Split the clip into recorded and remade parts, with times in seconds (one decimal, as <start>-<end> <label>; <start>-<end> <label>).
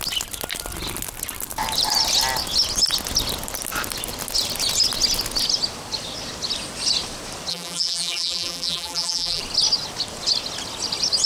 0.0-7.5 recorded; 7.5-9.4 remade; 9.4-11.3 recorded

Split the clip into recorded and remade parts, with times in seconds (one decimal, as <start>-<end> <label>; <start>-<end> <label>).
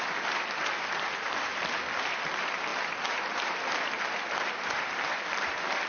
0.0-5.9 recorded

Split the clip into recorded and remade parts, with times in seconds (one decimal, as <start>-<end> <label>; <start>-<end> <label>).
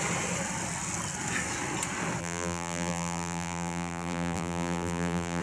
0.0-2.2 recorded; 2.2-5.4 remade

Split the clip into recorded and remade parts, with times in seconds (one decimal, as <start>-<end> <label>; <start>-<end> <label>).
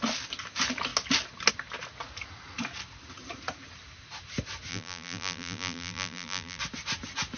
0.0-4.7 recorded; 4.7-6.6 remade; 6.6-7.4 recorded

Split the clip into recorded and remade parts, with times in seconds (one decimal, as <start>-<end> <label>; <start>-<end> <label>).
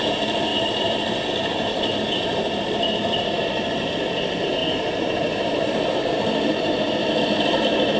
0.0-8.0 remade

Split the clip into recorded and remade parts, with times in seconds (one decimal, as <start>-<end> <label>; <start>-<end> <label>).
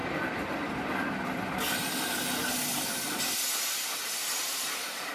0.0-1.4 remade; 1.4-1.8 recorded; 1.8-5.1 remade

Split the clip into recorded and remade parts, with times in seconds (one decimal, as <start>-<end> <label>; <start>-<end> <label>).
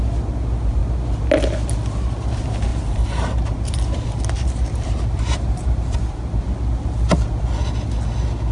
0.0-2.7 recorded; 2.7-6.4 remade; 6.4-8.5 recorded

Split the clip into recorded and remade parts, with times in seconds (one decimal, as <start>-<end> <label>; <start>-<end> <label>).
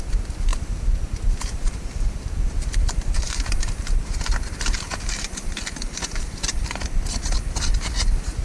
0.0-0.5 recorded; 0.5-5.5 remade; 5.5-8.4 recorded